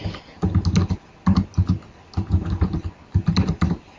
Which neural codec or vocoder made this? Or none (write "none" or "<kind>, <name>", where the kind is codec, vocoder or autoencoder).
none